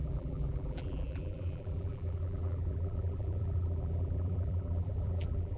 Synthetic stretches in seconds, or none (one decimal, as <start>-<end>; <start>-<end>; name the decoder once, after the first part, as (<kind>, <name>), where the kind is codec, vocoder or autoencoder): 0.0-5.6 (vocoder, BigVGAN v2)